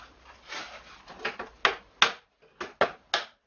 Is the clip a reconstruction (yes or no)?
no